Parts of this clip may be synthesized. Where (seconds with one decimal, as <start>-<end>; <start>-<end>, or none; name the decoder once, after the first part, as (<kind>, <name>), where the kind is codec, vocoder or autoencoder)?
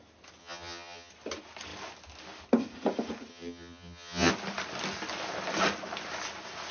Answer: 0.4-1.1 (vocoder, HiFi-GAN); 3.3-4.3